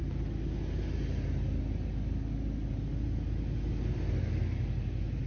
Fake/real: real